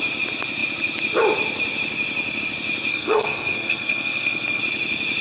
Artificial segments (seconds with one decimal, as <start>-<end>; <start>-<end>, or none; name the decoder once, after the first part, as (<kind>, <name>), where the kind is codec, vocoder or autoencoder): 2.9-4.6 (codec, SNAC)